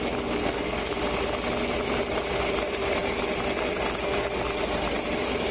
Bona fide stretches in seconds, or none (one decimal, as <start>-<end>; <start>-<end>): 0.0-0.4; 0.9-5.5